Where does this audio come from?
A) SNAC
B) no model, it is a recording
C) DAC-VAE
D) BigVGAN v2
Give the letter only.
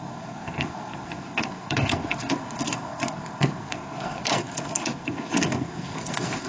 A